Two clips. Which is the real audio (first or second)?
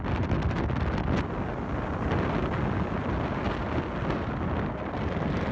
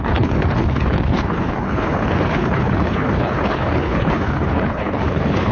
first